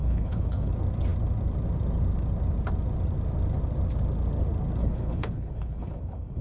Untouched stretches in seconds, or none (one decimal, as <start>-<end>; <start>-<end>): 0.7-4.8